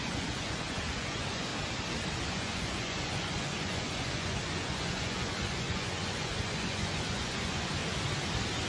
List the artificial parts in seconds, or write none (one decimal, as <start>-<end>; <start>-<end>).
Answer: 0.0-1.5; 2.2-7.8